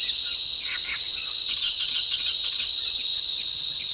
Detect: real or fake fake